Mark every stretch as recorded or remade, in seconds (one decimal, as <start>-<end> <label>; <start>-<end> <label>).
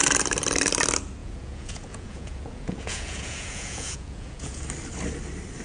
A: 0.0-1.2 recorded; 1.2-4.6 remade; 4.6-5.6 recorded